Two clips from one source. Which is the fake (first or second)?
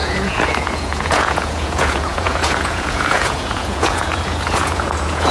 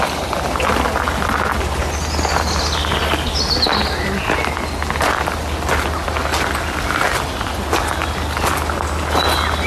first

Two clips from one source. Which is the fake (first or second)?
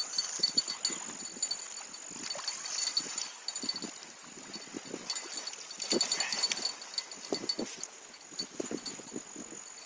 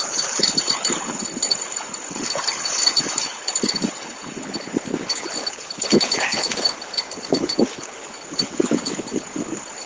second